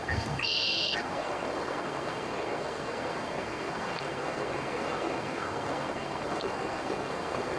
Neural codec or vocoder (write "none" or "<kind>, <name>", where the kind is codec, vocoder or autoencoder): codec, SNAC